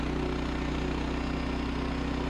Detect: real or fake real